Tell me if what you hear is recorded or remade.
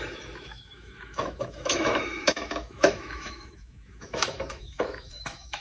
remade